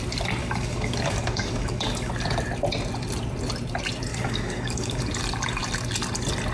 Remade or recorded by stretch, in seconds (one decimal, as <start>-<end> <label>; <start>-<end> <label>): 0.0-0.4 recorded; 0.4-2.1 remade; 2.1-4.1 recorded; 4.1-5.1 remade; 5.1-6.5 recorded